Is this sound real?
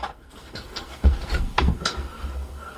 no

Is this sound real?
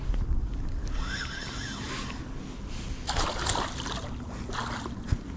yes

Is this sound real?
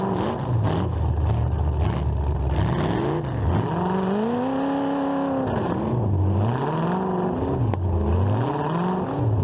yes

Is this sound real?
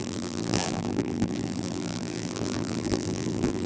no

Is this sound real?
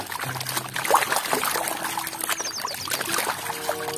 yes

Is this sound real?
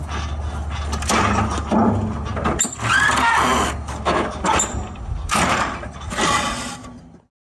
yes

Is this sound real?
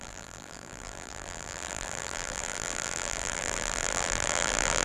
no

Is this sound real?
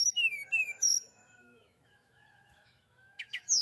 no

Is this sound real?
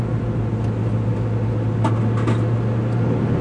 yes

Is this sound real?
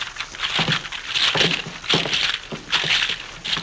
yes